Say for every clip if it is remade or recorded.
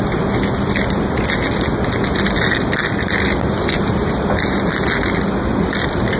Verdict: recorded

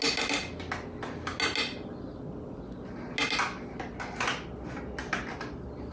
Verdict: recorded